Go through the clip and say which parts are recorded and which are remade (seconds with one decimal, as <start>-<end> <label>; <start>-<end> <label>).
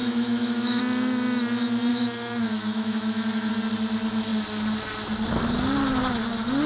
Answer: 0.0-0.8 remade; 0.8-1.9 recorded; 1.9-3.5 remade; 3.5-6.7 recorded